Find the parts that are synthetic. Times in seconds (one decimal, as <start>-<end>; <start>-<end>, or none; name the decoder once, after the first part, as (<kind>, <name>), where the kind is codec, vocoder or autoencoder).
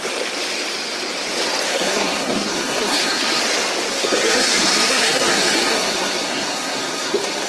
1.7-3.4 (codec, SNAC); 3.9-7.5